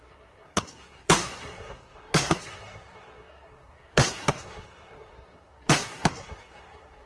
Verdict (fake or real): fake